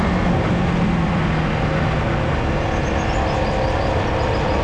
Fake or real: real